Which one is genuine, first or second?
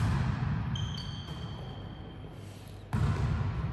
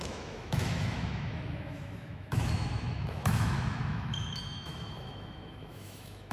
first